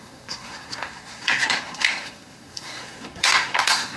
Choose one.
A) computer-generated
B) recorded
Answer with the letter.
A